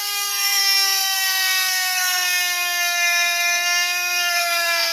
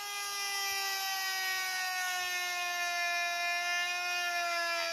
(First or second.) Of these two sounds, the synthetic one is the first